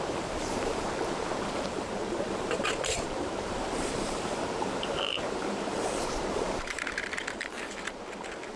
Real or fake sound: fake